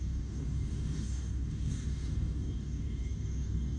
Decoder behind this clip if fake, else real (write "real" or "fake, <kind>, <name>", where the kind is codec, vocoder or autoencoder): fake, codec, DAC